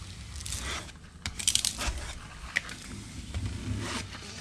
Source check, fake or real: real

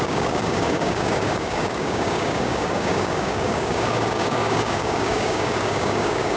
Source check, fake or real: fake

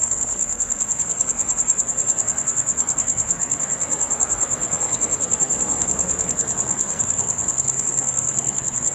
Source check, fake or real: fake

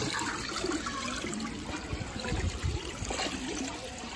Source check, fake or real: fake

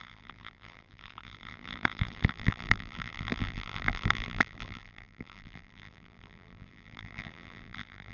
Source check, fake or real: fake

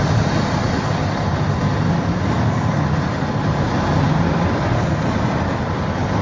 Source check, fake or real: fake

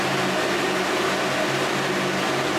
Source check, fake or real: real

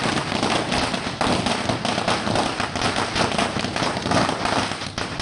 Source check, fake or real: real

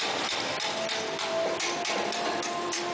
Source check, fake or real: fake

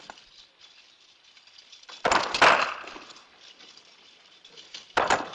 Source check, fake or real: fake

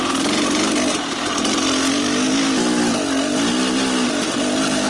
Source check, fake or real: real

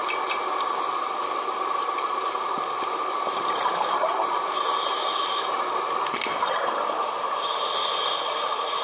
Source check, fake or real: real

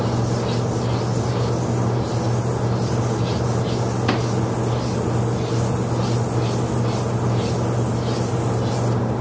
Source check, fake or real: real